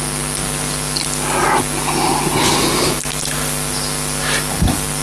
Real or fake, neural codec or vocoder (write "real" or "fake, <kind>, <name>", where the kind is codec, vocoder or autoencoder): real